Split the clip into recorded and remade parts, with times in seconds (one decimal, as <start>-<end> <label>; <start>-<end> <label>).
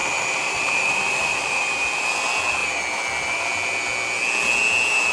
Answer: 0.0-1.6 remade; 1.6-5.1 recorded